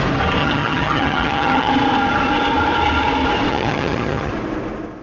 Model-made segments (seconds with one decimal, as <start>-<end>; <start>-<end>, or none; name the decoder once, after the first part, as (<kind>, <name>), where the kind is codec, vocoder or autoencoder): 0.4-1.7 (vocoder, HiFi-GAN); 3.5-4.3